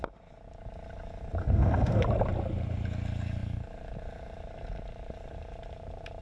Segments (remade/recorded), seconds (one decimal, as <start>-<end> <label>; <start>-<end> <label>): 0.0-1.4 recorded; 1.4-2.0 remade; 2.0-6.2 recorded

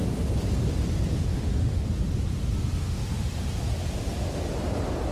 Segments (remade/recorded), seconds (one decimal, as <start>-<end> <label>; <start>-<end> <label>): 0.0-1.3 recorded; 1.3-1.9 remade; 1.9-2.8 recorded; 2.8-3.3 remade; 3.3-5.1 recorded

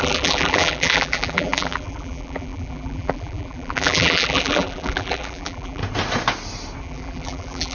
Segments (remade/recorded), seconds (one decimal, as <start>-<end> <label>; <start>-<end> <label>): 0.0-5.8 remade; 5.8-6.8 recorded; 6.8-7.7 remade

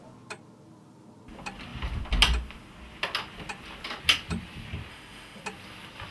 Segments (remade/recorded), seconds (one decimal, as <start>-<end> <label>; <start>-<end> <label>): 0.0-4.9 recorded; 4.9-5.4 remade; 5.4-6.1 recorded

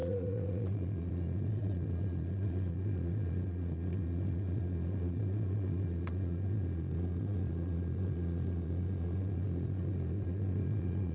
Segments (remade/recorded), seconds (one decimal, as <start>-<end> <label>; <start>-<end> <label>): 0.0-11.1 remade

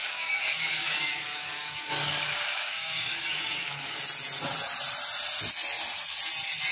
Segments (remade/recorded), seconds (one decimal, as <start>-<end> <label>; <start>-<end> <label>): 0.0-4.0 remade; 4.0-6.7 recorded

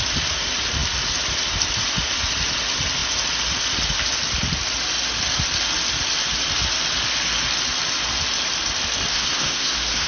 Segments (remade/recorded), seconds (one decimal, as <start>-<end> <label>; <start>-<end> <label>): 0.0-9.1 recorded; 9.1-10.1 remade

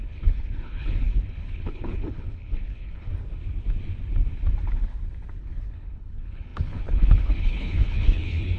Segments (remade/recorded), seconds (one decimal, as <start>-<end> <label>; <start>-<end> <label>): 0.0-3.1 remade; 3.1-5.4 recorded; 5.4-8.6 remade